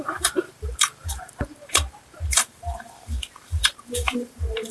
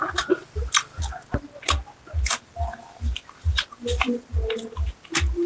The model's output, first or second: first